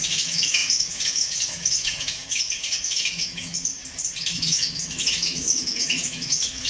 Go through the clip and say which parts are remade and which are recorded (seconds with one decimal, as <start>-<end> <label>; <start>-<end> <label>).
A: 0.0-3.7 remade; 3.7-4.2 recorded; 4.2-6.7 remade

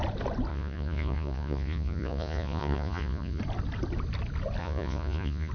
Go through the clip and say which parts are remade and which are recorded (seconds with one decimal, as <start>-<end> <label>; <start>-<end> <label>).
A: 0.0-0.5 recorded; 0.5-3.4 remade; 3.4-4.6 recorded; 4.6-5.5 remade

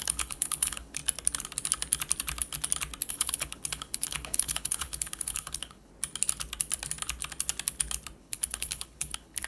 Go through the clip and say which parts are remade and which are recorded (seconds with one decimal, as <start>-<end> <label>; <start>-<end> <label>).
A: 0.0-1.0 remade; 1.0-3.1 recorded; 3.1-5.9 remade; 5.9-8.2 recorded; 8.2-9.5 remade

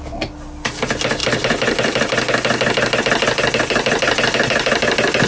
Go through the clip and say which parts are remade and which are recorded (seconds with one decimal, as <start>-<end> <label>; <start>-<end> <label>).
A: 0.0-5.3 recorded

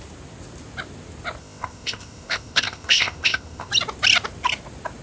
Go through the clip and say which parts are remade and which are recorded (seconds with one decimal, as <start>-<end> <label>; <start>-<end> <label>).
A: 0.0-1.4 recorded; 1.4-3.7 remade; 3.7-5.0 recorded

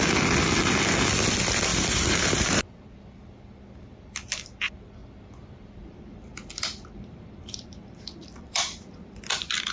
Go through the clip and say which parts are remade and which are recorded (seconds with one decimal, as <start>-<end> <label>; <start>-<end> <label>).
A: 0.0-1.7 recorded; 1.7-3.3 remade; 3.3-5.0 recorded; 5.0-9.2 remade; 9.2-9.7 recorded

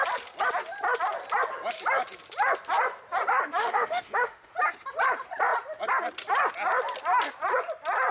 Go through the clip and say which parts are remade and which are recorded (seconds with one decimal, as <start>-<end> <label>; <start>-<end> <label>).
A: 0.0-3.6 recorded; 3.6-4.5 remade; 4.5-8.1 recorded